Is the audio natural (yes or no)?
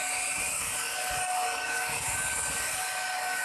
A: no